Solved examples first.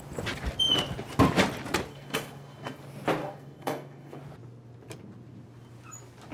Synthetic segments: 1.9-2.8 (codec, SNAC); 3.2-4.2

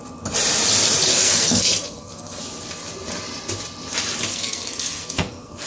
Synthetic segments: 1.1-2.4 (codec, SNAC); 4.3-5.7

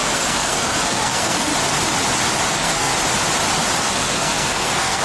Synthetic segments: 0.0-1.5 (codec, SNAC); 2.5-2.9; 3.8-5.0

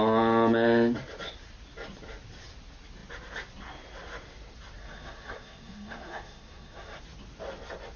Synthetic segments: 4.8-7.0 (codec, SNAC)